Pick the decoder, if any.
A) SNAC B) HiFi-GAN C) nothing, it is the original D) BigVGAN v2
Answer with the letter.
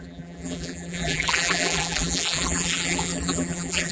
D